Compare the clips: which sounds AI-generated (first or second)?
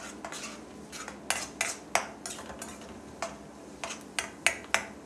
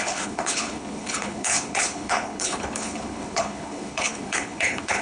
second